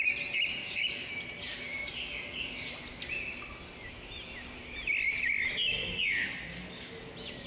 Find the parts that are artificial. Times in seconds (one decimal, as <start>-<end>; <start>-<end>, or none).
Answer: 0.5-1.1; 1.5-2.7; 6.2-6.9